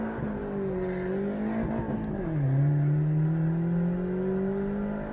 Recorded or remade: recorded